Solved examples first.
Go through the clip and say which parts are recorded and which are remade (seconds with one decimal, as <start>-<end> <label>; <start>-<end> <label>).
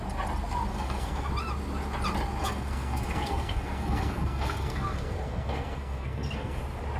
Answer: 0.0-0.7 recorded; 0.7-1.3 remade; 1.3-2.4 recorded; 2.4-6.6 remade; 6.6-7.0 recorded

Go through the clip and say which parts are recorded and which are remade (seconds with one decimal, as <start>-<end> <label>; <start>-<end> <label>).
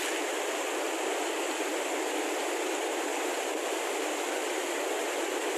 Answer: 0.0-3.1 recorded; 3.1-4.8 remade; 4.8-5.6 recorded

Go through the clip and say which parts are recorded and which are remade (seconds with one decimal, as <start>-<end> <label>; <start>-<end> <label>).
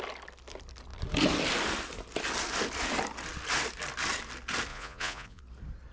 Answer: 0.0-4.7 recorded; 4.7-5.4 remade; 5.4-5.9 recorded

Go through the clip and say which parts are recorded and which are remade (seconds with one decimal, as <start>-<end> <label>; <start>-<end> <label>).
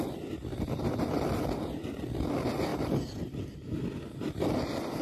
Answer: 0.0-2.7 recorded; 2.7-3.8 remade; 3.8-5.0 recorded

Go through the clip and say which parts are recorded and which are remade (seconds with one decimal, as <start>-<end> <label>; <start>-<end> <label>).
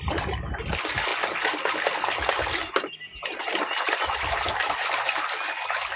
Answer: 0.0-6.0 recorded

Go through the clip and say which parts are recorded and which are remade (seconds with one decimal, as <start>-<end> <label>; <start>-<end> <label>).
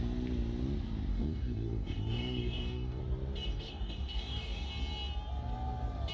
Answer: 0.0-1.1 recorded; 1.1-3.0 remade; 3.0-3.5 recorded; 3.5-4.7 remade; 4.7-6.1 recorded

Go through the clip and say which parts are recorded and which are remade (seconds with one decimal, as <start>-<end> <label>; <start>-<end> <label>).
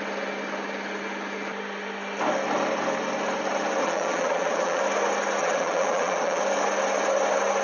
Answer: 0.0-3.8 recorded; 3.8-4.8 remade; 4.8-5.4 recorded; 5.4-6.4 remade; 6.4-7.6 recorded